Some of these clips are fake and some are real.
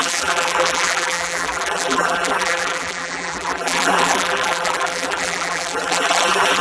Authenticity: fake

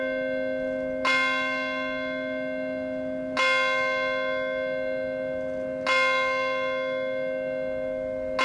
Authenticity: real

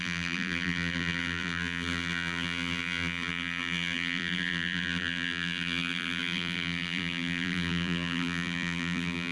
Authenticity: fake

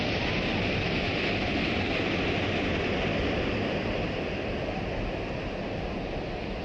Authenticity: fake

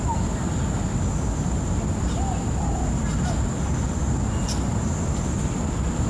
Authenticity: real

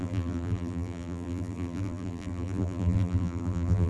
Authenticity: fake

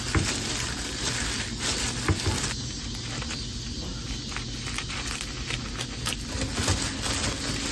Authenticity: real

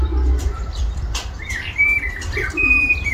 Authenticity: fake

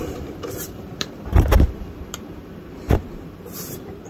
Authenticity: fake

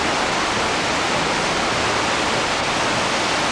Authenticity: real